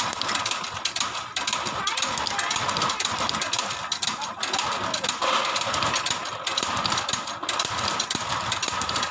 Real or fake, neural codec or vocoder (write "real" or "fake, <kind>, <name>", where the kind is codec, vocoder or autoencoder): real